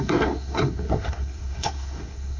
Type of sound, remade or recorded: remade